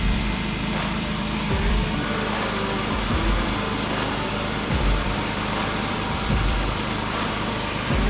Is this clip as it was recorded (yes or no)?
no